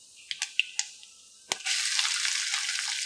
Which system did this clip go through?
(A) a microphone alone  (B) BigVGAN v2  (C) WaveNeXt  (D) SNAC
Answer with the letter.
A